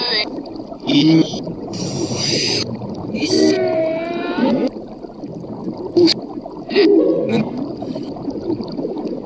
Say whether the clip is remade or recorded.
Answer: recorded